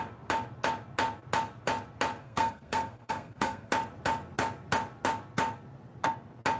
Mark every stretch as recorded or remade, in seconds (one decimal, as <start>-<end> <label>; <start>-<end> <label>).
0.0-2.2 recorded; 2.2-3.7 remade; 3.7-6.6 recorded